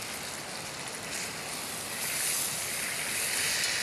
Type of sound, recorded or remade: recorded